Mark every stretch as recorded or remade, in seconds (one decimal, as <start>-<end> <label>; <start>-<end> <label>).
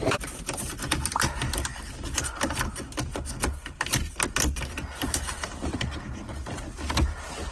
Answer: 0.0-7.5 recorded